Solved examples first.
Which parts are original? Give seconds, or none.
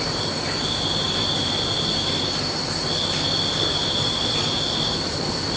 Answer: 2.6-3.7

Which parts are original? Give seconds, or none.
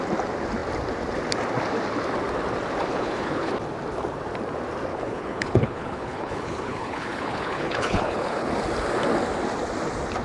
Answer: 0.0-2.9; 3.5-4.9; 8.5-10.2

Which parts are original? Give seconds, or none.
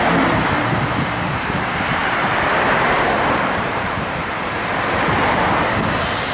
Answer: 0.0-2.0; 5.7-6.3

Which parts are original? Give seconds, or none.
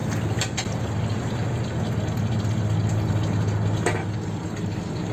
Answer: 0.0-4.0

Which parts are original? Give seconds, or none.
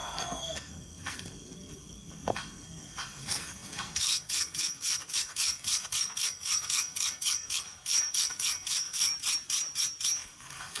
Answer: 9.1-10.2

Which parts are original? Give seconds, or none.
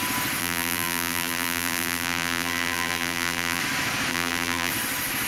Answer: 0.0-0.4; 3.6-4.1; 4.7-5.3